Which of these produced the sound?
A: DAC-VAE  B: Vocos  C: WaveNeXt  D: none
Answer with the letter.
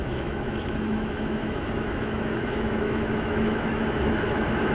A